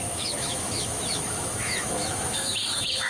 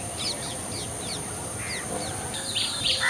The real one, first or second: second